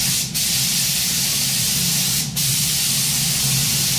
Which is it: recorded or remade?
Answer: remade